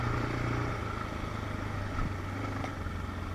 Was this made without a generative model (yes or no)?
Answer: yes